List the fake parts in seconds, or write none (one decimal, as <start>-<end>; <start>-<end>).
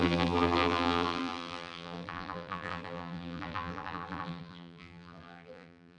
0.0-6.0